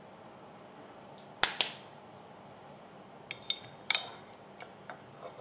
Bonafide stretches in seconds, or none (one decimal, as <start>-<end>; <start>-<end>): 0.0-5.4